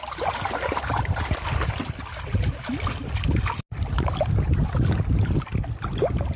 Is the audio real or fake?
real